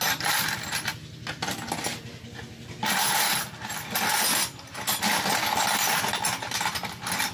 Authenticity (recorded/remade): recorded